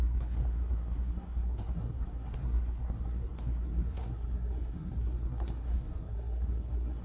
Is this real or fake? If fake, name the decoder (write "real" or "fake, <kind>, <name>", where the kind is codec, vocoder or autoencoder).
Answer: fake, codec, SNAC